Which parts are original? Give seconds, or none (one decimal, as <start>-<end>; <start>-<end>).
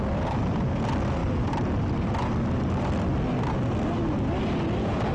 0.0-5.1